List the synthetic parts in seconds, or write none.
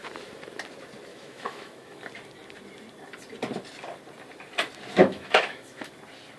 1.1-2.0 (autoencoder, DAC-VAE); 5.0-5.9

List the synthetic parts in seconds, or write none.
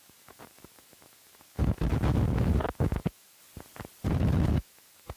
0.0-3.4 (autoencoder, DAC-VAE); 4.1-5.2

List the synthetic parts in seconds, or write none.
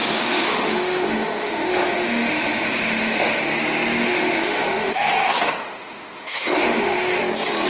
0.0-3.4 (autoencoder, DAC-VAE); 4.0-7.2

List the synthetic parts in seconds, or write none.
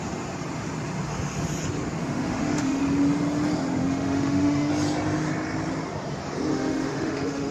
2.0-2.8 (autoencoder, DAC-VAE); 3.8-4.7; 6.5-7.5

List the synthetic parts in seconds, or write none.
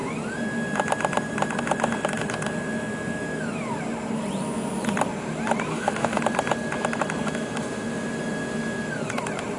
5.7-6.2 (autoencoder, DAC-VAE)